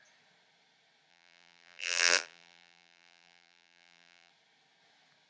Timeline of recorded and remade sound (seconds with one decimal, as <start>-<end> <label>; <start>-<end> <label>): 0.0-1.1 recorded; 1.1-4.3 remade; 4.3-5.3 recorded